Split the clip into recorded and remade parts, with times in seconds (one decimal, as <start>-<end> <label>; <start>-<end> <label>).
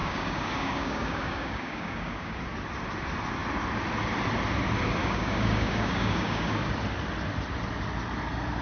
0.0-2.4 remade; 2.4-5.0 recorded; 5.0-6.7 remade; 6.7-8.6 recorded